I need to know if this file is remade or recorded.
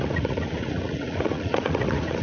remade